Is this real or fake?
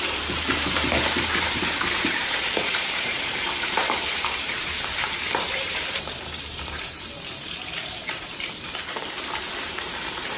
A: fake